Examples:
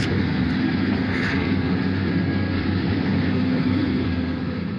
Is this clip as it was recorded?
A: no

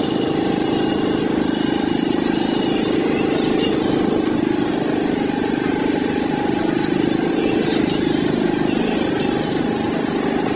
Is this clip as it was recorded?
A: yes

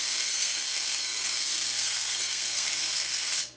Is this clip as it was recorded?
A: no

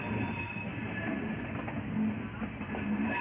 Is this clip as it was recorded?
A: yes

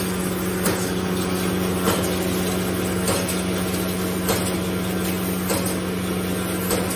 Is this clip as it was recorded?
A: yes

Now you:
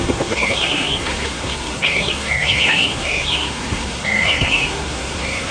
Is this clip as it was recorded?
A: no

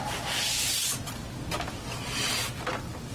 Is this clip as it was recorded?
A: yes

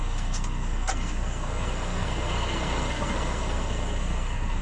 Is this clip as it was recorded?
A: no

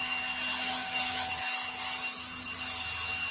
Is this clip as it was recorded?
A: yes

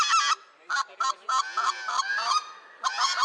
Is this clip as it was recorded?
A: yes